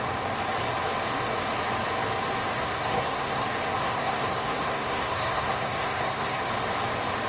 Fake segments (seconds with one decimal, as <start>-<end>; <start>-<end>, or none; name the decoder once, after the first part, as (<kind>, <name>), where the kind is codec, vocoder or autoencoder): 2.6-3.4 (codec, SNAC); 3.8-6.4